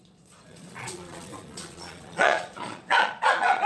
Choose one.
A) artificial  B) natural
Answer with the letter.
A